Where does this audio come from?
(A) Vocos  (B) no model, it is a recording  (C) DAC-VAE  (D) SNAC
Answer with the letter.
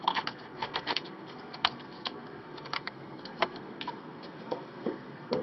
D